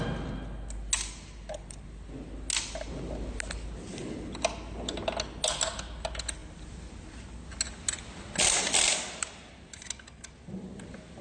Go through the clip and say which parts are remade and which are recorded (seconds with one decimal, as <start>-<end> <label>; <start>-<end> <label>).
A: 0.0-11.2 recorded